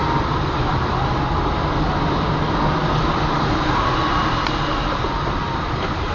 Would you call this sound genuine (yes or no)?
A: yes